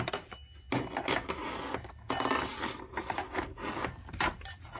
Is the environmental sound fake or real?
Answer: real